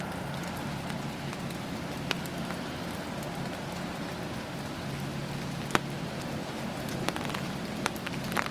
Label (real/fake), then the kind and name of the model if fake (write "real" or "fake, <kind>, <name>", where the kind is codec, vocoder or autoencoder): real